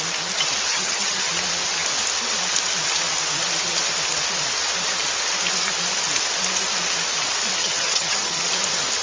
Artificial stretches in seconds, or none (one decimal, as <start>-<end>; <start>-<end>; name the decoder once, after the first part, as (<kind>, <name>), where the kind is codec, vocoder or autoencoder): 0.7-1.3 (vocoder, HiFi-GAN); 7.6-8.4